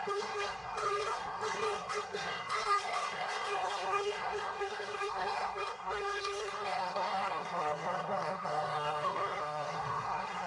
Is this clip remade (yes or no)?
yes